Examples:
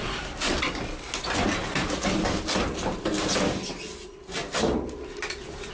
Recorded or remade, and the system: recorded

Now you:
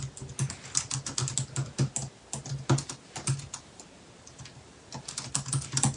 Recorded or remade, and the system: recorded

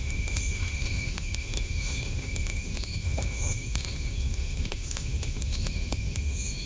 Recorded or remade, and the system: remade, autoencoder, DAC-VAE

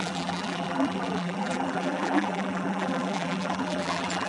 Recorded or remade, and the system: remade, vocoder, BigVGAN v2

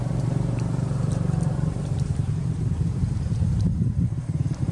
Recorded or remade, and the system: remade, vocoder, BigVGAN v2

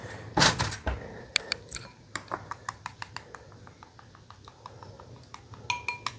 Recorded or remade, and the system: recorded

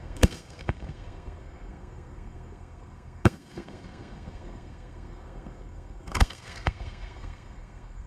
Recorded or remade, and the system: remade, codec, SNAC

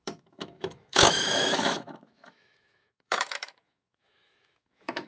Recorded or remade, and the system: remade, autoencoder, DAC-VAE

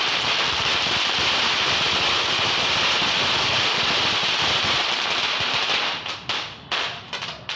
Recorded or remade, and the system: recorded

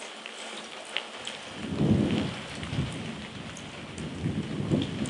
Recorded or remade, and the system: recorded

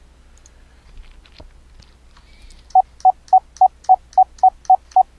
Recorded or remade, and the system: recorded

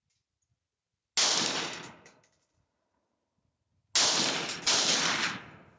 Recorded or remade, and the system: recorded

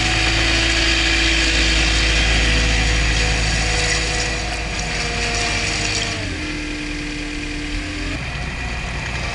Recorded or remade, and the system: recorded